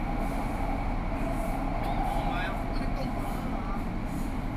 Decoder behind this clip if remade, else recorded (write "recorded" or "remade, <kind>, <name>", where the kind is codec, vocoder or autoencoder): recorded